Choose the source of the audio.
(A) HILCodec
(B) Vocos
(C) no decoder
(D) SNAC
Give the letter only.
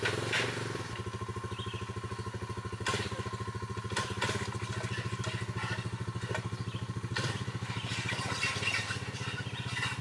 C